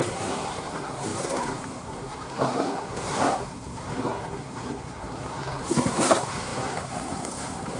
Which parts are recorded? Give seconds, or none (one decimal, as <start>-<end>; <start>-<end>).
none